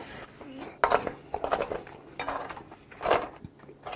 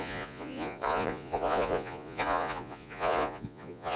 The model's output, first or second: second